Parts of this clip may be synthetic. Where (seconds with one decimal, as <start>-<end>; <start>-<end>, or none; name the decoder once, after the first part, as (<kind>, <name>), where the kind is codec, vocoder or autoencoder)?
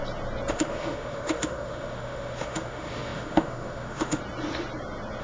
0.5-4.2 (autoencoder, DAC-VAE)